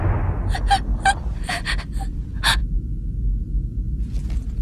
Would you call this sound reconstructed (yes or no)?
no